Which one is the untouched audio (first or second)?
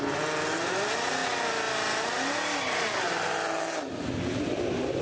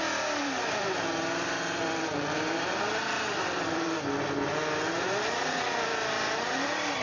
first